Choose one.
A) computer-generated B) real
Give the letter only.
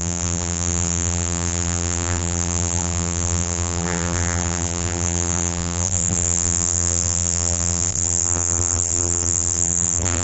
A